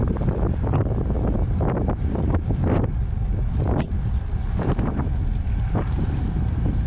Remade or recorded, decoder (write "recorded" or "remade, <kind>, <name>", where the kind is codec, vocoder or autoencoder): remade, vocoder, BigVGAN v2